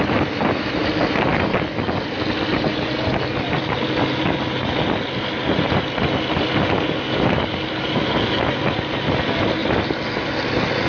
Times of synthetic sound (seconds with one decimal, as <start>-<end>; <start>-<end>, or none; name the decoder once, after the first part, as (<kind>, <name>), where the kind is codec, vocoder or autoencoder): none